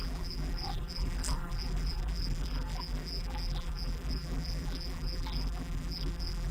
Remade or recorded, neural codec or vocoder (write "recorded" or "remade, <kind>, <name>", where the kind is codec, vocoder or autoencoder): remade, vocoder, BigVGAN v2